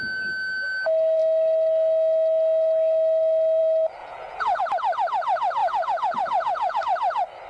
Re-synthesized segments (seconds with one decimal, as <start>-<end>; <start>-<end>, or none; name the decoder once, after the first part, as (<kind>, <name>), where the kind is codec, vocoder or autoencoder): 4.0-4.6 (vocoder, Vocos); 5.6-6.8